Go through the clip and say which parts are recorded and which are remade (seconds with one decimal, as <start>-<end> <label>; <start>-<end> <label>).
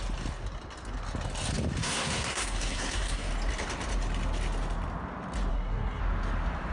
0.0-1.8 recorded; 1.8-3.3 remade; 3.3-5.5 recorded; 5.5-6.0 remade; 6.0-6.7 recorded